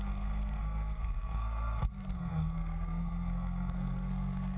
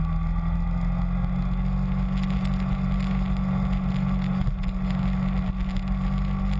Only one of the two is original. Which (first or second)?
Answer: second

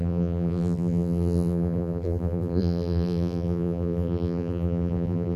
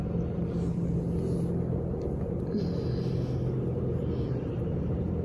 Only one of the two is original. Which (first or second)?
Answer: second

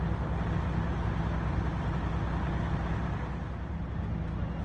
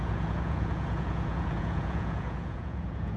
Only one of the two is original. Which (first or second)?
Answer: first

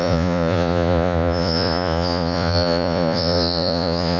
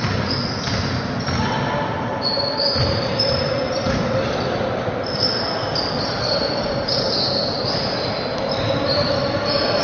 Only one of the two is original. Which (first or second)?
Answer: second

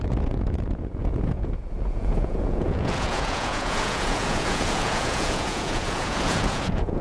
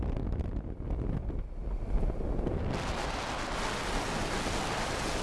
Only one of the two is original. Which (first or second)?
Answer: second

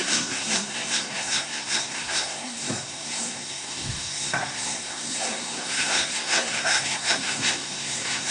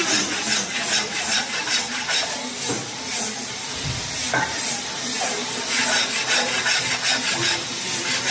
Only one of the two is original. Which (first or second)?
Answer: second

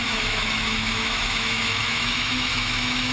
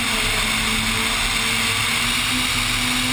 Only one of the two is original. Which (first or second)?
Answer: second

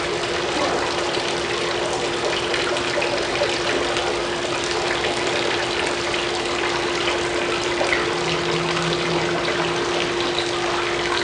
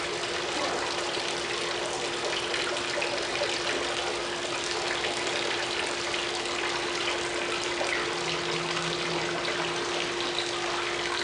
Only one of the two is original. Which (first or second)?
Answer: second